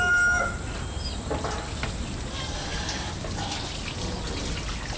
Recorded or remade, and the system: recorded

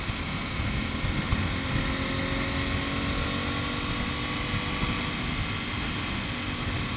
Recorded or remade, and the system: recorded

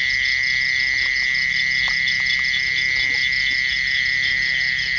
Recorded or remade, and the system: recorded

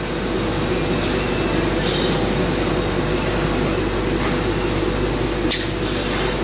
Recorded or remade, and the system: recorded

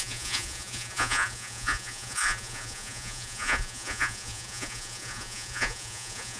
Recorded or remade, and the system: remade, vocoder, Vocos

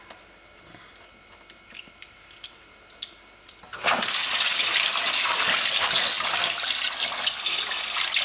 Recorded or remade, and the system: recorded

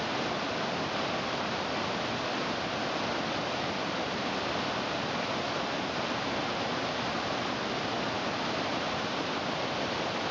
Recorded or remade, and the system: recorded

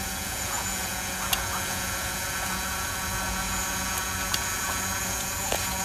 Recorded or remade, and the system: remade, vocoder, Vocos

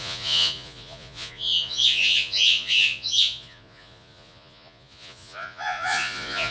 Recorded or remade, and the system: remade, vocoder, Vocos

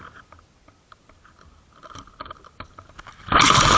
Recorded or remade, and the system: recorded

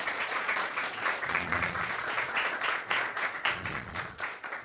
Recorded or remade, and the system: remade, vocoder, Vocos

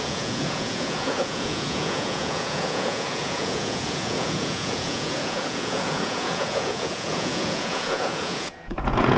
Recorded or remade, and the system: remade, vocoder, Vocos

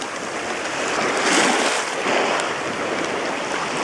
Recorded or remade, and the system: recorded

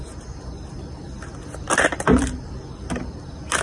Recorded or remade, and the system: recorded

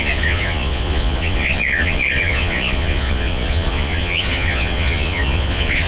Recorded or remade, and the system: remade, vocoder, Vocos